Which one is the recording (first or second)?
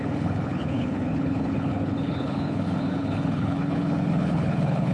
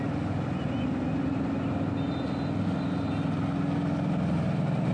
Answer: second